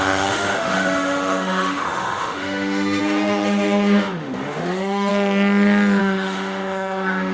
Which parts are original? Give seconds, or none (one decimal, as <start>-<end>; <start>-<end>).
5.1-6.0

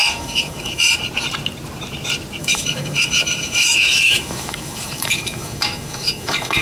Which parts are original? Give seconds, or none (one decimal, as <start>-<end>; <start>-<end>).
1.0-2.4

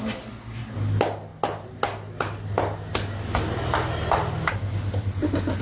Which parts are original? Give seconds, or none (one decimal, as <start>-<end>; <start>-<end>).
0.0-5.6

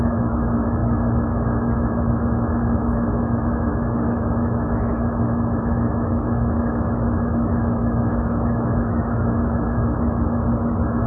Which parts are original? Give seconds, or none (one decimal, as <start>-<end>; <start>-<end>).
none

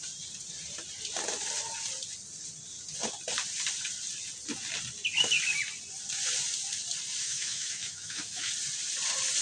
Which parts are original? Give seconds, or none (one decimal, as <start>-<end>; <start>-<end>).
0.0-7.2; 8.5-9.4

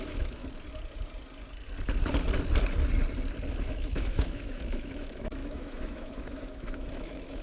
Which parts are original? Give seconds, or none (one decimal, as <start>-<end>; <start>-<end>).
0.4-3.5

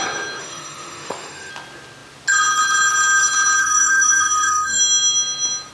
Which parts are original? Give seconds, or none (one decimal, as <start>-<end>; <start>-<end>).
0.0-0.4; 1.5-3.6; 4.8-5.7

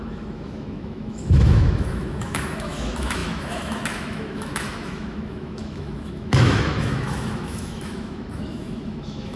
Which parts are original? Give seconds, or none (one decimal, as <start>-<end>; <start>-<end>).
none